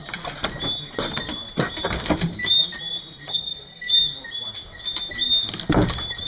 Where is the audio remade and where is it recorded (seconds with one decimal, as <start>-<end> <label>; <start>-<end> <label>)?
0.0-3.3 recorded; 3.3-3.9 remade; 3.9-6.3 recorded